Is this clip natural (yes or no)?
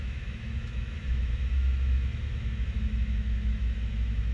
no